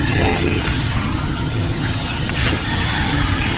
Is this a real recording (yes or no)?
no